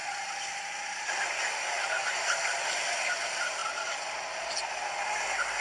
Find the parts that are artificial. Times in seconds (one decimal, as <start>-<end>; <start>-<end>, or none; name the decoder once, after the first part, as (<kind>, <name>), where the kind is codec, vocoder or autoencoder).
3.6-4.6 (vocoder, BigVGAN v2)